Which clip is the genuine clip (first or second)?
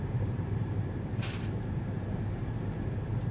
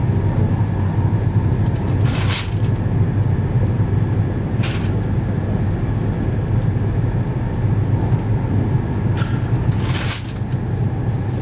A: second